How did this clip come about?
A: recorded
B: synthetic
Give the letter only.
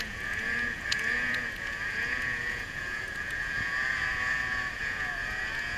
B